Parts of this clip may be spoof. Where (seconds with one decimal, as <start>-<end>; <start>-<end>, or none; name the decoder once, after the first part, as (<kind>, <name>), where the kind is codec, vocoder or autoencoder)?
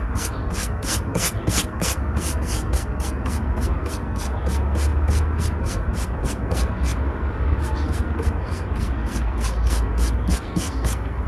0.0-11.3 (codec, SNAC)